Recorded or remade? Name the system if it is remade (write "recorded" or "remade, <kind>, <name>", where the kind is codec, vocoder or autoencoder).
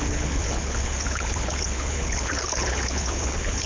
remade, codec, HILCodec